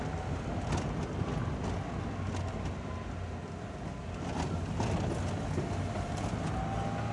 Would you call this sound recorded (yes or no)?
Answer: yes